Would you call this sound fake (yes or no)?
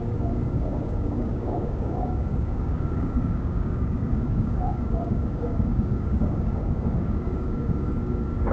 yes